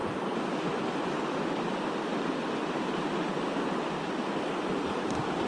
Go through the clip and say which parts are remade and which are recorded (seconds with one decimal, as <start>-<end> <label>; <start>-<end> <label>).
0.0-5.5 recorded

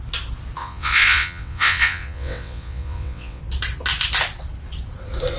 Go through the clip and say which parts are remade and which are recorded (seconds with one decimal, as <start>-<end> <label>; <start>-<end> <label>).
0.0-0.6 recorded; 0.6-3.4 remade; 3.4-5.4 recorded

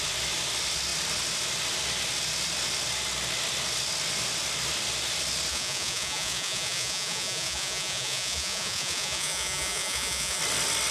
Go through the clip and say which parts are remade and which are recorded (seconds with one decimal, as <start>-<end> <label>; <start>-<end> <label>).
0.0-5.5 recorded; 5.5-10.4 remade; 10.4-10.9 recorded

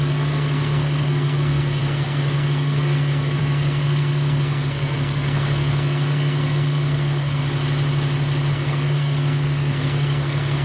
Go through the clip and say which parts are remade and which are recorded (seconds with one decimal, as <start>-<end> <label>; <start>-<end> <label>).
0.0-7.4 remade; 7.4-8.5 recorded; 8.5-10.6 remade

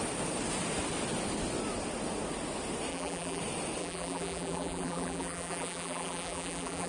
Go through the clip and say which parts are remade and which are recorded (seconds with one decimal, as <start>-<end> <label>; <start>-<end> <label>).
0.0-2.9 recorded; 2.9-3.4 remade; 3.4-3.8 recorded; 3.8-6.9 remade

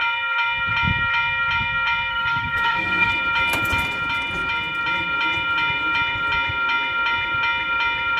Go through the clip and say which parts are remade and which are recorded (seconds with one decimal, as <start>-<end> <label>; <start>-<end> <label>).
0.0-2.1 recorded; 2.1-3.1 remade; 3.1-8.2 recorded

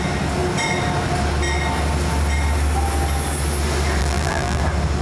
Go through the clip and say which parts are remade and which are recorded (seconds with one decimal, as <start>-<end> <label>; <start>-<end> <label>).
0.0-4.0 recorded; 4.0-4.6 remade; 4.6-5.0 recorded